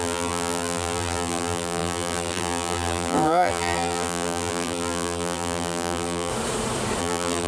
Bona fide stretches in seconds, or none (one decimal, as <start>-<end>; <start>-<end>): 6.3-7.0